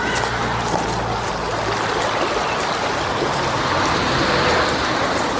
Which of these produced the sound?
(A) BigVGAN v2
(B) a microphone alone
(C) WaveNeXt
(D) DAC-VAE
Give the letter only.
B